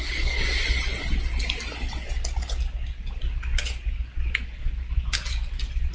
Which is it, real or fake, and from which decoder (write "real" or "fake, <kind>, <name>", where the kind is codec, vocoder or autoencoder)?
real